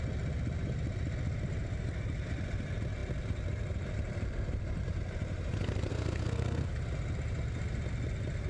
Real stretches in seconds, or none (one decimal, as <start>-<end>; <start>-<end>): 0.0-5.9; 6.7-8.5